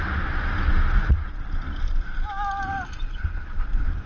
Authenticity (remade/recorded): recorded